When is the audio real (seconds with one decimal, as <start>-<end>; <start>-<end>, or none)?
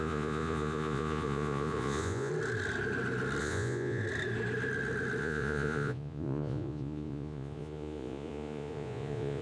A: 2.3-3.4; 4.0-5.2